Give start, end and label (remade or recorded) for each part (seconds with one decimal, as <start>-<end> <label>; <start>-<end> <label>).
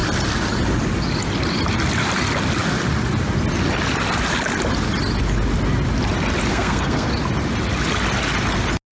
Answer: 0.0-6.5 recorded; 6.5-7.1 remade; 7.1-9.0 recorded